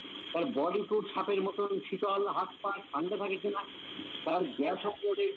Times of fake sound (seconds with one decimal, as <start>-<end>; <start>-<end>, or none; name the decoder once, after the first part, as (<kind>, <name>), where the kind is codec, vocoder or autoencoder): 4.3-5.4 (codec, SNAC)